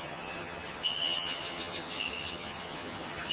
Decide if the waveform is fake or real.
fake